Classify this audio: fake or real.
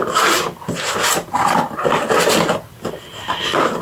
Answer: real